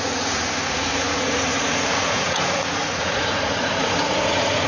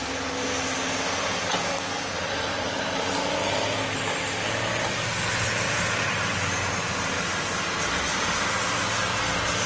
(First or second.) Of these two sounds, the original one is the second